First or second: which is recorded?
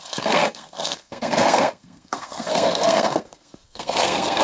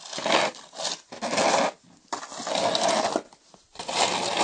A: second